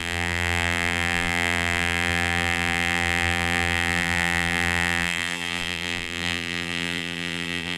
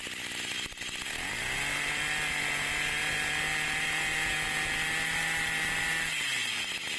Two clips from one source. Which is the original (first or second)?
second